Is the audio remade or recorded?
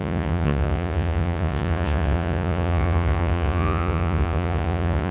remade